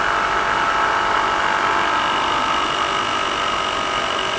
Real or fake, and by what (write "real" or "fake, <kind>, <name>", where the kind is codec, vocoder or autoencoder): real